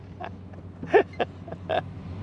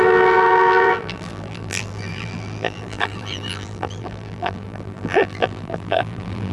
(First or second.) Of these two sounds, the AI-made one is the second